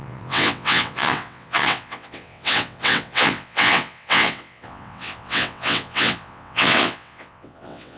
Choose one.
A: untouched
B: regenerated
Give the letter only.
B